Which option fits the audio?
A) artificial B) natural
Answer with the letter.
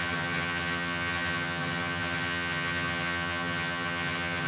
A